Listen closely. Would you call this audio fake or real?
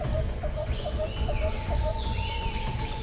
fake